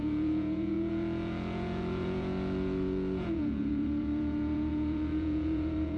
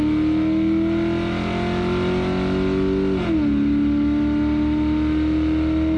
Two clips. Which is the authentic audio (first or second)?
second